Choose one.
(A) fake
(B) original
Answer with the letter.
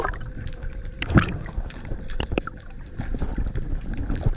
A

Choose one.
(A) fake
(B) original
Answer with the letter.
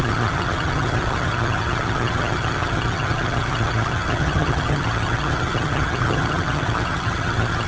A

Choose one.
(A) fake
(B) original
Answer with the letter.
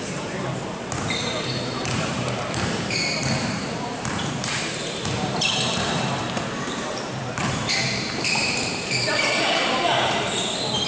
A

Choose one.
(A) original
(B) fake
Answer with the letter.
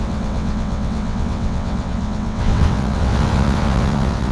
B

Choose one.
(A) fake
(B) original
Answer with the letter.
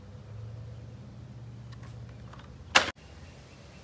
B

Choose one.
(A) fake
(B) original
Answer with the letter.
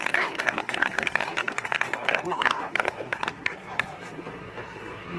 A